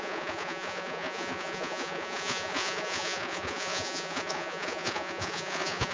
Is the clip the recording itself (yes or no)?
no